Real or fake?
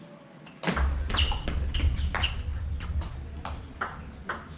real